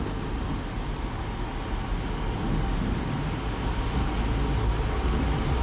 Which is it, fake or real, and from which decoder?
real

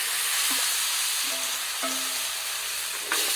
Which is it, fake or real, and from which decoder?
real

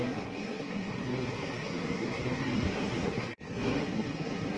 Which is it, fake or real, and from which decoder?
fake, codec, SNAC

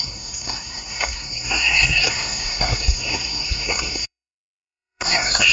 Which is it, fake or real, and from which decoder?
fake, codec, SNAC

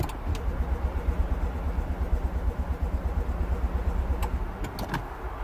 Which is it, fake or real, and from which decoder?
real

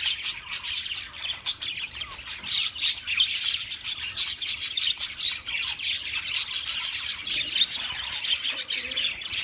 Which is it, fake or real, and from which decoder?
real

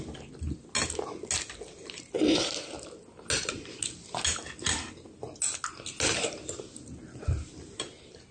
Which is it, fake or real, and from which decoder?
real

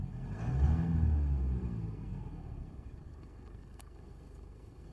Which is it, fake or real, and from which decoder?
fake, codec, SNAC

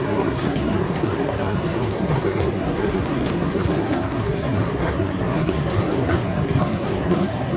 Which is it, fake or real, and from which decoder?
fake, codec, SNAC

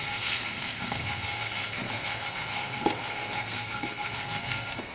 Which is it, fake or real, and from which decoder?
fake, codec, SNAC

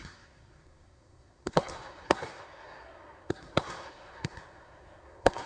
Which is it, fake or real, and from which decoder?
fake, codec, SNAC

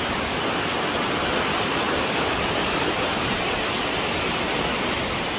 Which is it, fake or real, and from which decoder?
real